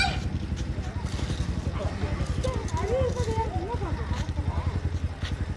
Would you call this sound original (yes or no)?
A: yes